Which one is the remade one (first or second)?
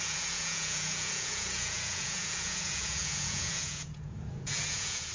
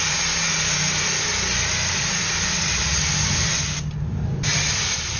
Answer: first